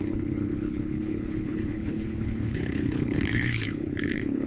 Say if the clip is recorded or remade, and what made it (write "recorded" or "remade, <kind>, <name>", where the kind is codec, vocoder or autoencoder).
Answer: remade, codec, HILCodec